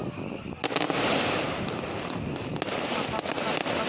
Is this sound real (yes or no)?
yes